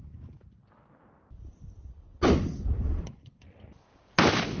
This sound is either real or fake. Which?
real